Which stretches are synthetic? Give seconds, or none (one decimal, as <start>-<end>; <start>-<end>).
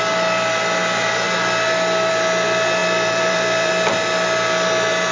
2.8-3.7